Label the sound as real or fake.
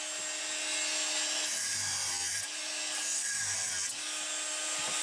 real